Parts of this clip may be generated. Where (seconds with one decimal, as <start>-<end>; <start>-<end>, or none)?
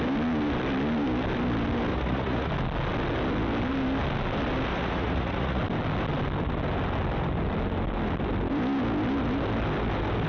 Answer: 1.9-2.5; 4.7-5.6